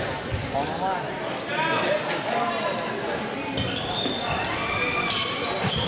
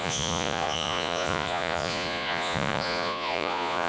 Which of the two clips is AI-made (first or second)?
second